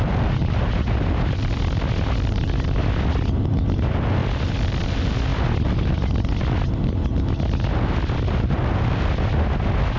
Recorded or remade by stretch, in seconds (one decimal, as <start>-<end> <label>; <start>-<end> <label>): 0.0-10.0 recorded